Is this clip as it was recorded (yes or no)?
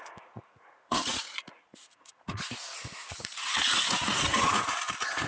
no